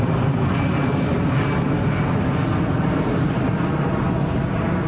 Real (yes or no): yes